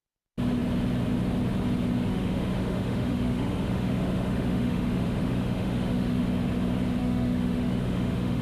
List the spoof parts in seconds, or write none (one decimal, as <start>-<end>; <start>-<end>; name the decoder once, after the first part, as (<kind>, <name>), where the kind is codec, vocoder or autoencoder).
2.1-6.2 (autoencoder, DAC-VAE); 7.0-8.4